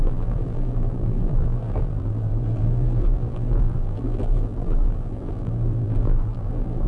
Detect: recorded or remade remade